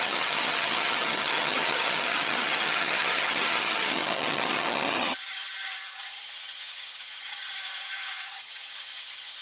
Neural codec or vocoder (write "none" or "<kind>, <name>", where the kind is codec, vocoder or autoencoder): vocoder, HiFi-GAN